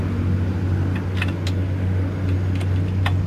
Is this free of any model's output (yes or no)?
yes